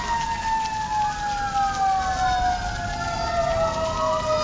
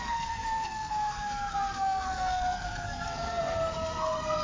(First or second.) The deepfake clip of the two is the second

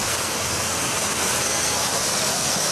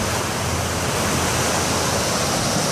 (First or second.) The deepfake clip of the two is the first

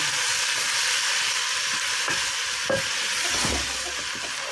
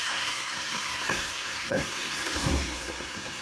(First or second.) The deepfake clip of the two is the second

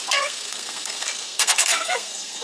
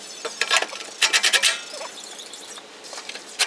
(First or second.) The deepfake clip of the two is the first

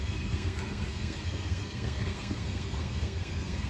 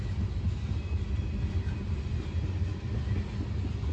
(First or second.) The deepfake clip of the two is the first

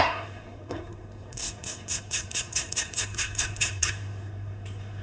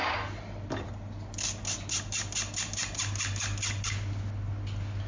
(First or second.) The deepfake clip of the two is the first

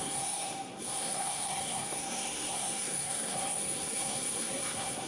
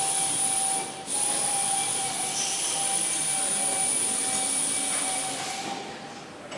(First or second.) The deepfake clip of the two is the first